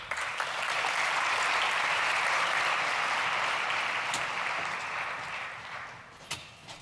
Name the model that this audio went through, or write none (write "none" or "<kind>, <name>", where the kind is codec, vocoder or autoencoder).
none